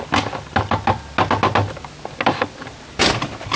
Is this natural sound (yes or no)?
yes